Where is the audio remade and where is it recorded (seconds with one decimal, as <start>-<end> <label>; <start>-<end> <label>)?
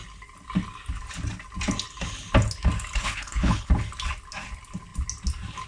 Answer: 0.0-3.0 recorded; 3.0-3.7 remade; 3.7-5.7 recorded